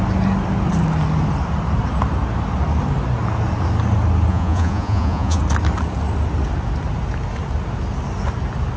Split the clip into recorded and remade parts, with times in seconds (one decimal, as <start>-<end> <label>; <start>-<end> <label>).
0.0-4.3 recorded; 4.3-5.4 remade; 5.4-8.8 recorded

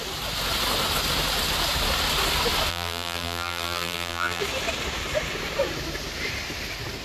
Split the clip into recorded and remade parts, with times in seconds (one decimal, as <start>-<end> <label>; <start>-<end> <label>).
0.0-2.7 recorded; 2.7-4.4 remade; 4.4-7.0 recorded

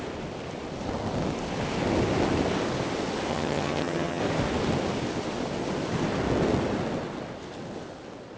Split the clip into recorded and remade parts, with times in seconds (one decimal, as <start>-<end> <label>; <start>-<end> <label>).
0.0-3.3 recorded; 3.3-4.2 remade; 4.2-8.4 recorded

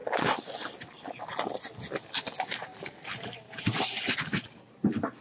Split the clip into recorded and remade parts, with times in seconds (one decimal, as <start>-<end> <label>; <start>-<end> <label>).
0.0-2.7 recorded; 2.7-4.0 remade; 4.0-5.2 recorded

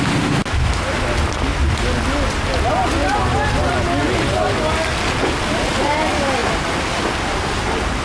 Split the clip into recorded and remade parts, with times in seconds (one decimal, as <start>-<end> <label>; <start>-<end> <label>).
0.0-8.0 recorded